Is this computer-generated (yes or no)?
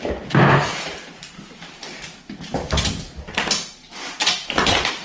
no